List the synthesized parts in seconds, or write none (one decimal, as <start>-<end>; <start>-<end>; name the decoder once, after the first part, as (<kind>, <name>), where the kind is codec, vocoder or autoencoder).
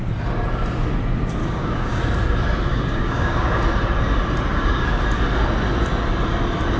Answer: 1.4-2.0 (codec, DAC); 2.7-3.6; 4.5-5.0